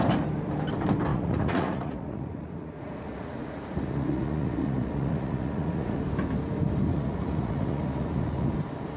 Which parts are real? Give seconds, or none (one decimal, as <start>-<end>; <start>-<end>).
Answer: 0.0-1.1; 6.0-6.9; 8.5-9.0